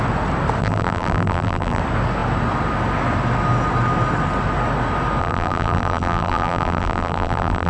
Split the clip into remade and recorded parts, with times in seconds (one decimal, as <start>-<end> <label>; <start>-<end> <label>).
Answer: 0.0-0.6 recorded; 0.6-1.8 remade; 1.8-5.2 recorded; 5.2-7.7 remade